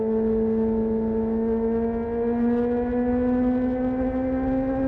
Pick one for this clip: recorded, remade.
recorded